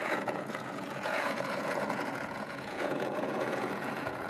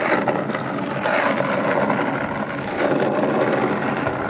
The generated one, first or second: first